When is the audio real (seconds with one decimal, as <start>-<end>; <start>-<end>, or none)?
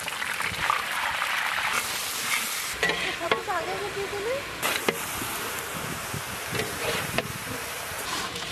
0.0-0.6; 3.8-5.9